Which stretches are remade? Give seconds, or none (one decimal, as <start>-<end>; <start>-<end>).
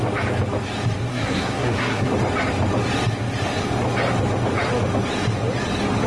1.1-2.1